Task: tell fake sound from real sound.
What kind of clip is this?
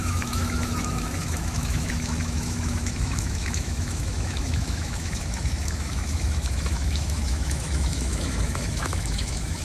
fake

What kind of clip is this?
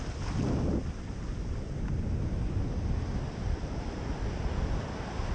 real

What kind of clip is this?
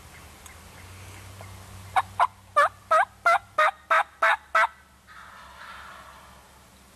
real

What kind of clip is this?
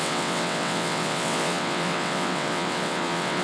fake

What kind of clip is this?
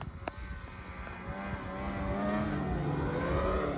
real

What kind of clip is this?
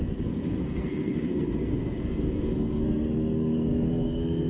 fake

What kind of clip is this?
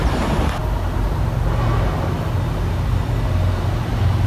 real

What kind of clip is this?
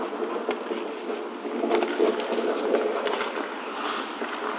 real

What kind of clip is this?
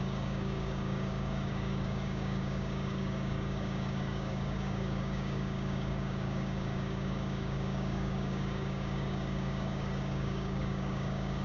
fake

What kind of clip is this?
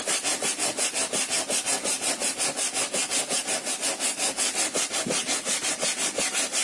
real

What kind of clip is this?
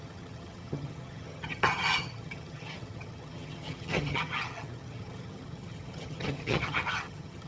fake